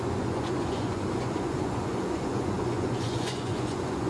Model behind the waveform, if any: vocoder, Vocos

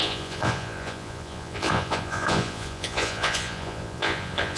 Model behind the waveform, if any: vocoder, Vocos